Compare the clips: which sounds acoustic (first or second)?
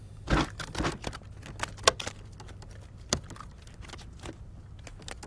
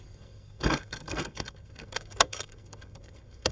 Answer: first